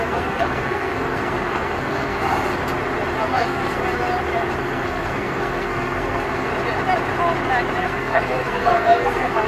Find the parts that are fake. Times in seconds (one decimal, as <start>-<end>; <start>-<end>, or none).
0.0-2.3; 3.2-3.8; 4.6-6.5; 7.8-9.5